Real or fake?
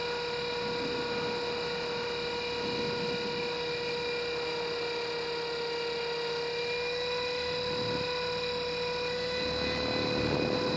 real